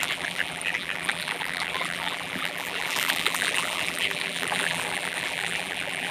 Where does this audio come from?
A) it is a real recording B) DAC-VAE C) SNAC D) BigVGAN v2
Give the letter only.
D